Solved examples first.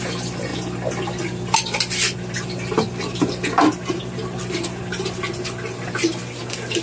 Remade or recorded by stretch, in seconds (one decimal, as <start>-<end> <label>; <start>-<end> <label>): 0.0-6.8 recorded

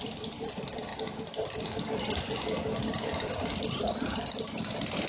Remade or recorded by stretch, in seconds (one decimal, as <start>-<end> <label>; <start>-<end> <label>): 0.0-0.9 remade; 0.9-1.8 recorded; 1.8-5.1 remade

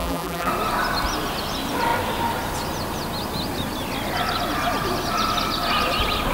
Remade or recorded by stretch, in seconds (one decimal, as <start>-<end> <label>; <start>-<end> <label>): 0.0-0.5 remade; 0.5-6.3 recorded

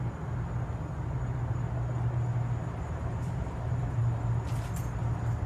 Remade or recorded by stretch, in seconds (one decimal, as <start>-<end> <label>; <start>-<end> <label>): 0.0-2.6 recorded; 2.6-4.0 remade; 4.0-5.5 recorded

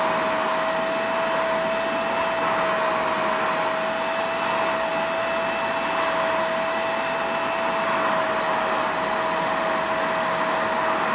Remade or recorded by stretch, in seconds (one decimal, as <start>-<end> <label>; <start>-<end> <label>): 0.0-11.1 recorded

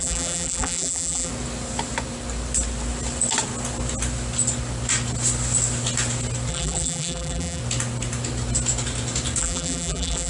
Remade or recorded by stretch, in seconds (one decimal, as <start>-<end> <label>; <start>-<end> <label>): 0.0-1.3 remade; 1.3-6.5 recorded; 6.5-7.6 remade; 7.6-9.4 recorded; 9.4-10.3 remade